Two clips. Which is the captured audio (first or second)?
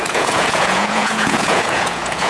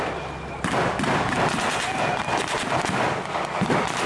second